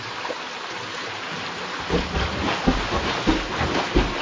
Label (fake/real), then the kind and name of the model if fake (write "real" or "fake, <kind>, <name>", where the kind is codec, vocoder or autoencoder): real